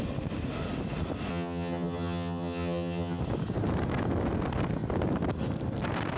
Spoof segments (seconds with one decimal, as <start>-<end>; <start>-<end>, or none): 1.3-3.2